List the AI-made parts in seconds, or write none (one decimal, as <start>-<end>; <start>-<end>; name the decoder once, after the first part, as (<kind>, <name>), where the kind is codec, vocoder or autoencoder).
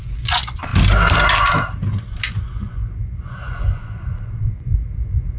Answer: 0.0-0.7 (vocoder, Vocos); 2.3-5.4